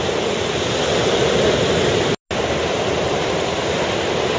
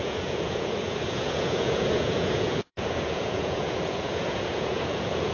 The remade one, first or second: second